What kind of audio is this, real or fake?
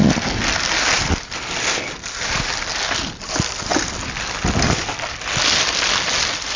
real